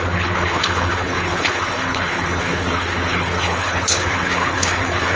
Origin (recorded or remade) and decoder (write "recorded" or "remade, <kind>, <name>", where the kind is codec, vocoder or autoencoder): remade, codec, HILCodec